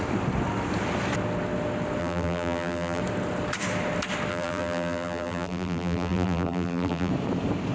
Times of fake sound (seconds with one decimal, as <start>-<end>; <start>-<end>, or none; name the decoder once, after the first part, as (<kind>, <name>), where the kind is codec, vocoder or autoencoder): 2.0-3.0 (vocoder, BigVGAN v2); 4.3-7.1